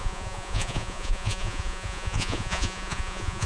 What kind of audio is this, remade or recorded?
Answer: remade